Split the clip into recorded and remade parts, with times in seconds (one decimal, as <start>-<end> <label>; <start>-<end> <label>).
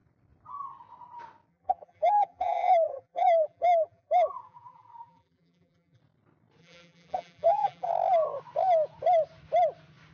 0.0-1.5 recorded; 1.5-6.0 remade; 6.0-6.6 recorded; 6.6-7.9 remade; 7.9-10.1 recorded